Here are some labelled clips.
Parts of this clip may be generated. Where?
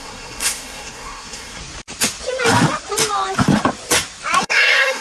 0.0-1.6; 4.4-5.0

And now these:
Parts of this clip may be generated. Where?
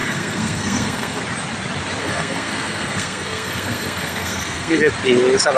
0.0-1.2; 2.0-4.9